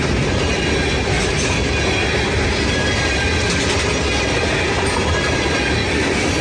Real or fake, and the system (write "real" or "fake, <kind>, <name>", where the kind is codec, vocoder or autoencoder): real